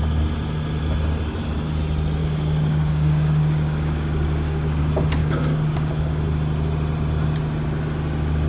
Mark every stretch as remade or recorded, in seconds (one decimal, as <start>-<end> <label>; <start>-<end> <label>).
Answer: 0.0-2.2 recorded; 2.2-4.8 remade; 4.8-5.2 recorded; 5.2-6.2 remade; 6.2-8.5 recorded